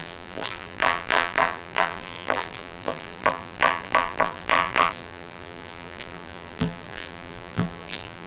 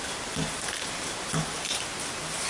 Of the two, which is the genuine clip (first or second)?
second